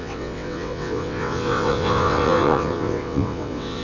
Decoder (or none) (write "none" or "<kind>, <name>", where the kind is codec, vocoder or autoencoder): vocoder, WaveNeXt